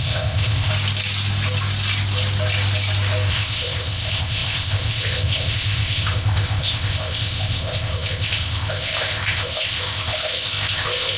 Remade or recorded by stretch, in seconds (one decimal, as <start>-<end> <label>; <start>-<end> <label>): 0.0-0.7 remade; 0.7-3.3 recorded; 3.3-11.2 remade

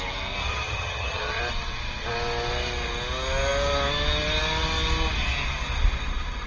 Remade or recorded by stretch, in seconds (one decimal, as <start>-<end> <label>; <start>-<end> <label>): 0.0-0.4 recorded; 0.4-1.4 remade; 1.4-6.5 recorded

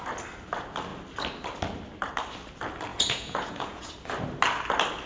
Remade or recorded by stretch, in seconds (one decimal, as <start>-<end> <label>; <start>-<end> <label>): 0.0-2.9 recorded; 2.9-3.9 remade; 3.9-5.1 recorded

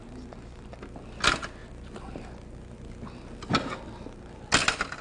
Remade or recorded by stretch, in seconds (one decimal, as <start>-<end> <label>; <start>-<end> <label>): 0.0-5.0 recorded

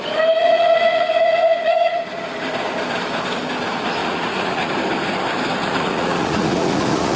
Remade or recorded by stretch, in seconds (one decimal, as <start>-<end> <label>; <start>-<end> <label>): 0.0-0.4 recorded; 0.4-2.0 remade; 2.0-4.0 recorded; 4.0-4.7 remade; 4.7-5.6 recorded; 5.6-7.2 remade